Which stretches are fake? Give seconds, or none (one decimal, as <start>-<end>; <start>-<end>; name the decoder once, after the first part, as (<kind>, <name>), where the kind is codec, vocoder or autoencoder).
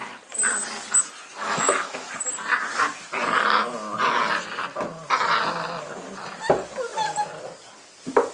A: 1.4-2.1 (autoencoder, DAC-VAE)